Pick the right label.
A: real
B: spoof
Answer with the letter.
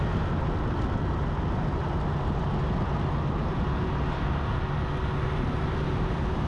A